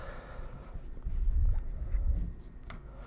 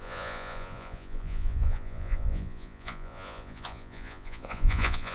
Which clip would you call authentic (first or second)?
first